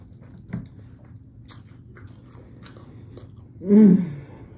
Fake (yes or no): no